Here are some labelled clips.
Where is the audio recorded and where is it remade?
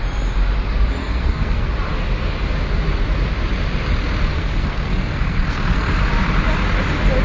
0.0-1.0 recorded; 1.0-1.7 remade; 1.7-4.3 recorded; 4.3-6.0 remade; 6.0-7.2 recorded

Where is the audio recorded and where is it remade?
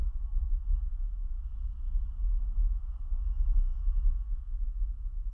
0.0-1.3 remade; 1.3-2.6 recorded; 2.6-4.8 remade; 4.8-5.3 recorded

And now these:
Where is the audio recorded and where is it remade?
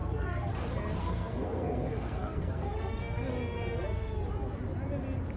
0.0-0.5 remade; 0.5-1.0 recorded; 1.0-4.2 remade; 4.2-5.4 recorded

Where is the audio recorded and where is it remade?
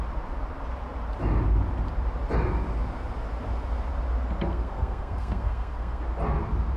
0.0-4.5 recorded; 4.5-6.0 remade; 6.0-6.8 recorded